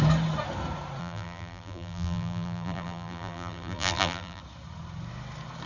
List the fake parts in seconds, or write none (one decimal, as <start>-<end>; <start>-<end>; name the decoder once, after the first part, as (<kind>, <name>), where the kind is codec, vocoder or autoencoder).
1.0-4.4 (vocoder, BigVGAN v2)